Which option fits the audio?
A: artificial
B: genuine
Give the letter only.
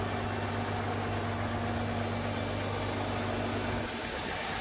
B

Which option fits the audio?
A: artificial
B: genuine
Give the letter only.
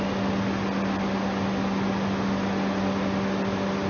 B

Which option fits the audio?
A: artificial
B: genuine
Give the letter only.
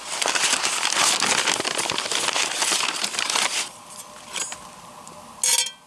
B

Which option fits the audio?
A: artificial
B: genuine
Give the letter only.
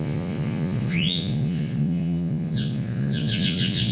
A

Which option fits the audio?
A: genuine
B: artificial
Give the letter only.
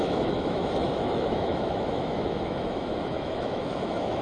B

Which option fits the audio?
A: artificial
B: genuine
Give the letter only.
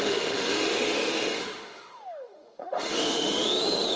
A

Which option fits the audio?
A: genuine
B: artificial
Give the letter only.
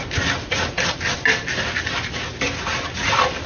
A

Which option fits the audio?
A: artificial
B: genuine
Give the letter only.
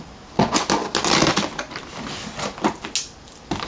B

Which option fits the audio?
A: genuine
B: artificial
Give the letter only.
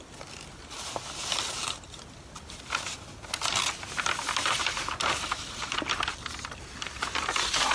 A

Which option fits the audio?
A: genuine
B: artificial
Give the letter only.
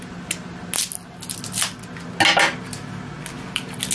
A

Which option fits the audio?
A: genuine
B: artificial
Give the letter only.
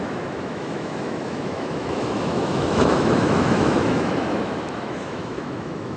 B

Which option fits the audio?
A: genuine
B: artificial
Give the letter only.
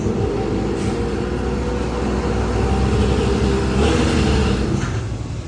A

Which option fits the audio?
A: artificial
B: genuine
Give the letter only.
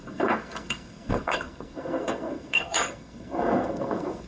A